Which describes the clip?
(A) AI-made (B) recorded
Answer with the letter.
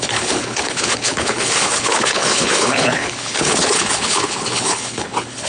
A